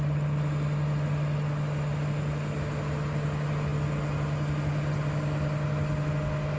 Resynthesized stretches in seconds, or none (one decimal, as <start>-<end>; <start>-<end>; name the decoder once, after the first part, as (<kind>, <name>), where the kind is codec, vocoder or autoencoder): none